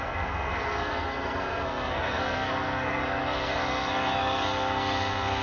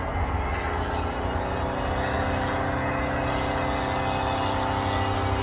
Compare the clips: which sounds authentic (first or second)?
second